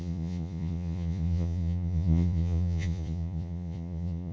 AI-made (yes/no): yes